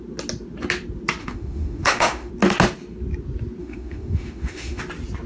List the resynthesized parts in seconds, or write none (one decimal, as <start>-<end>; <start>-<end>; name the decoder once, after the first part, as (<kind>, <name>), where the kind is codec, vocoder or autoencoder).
1.2-2.3 (autoencoder, DAC-VAE); 3.6-4.8